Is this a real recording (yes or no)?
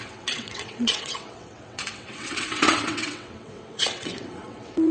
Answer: no